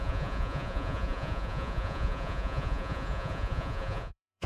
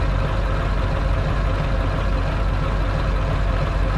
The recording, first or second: second